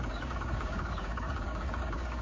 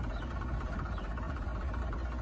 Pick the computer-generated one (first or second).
first